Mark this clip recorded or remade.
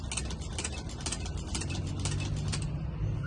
recorded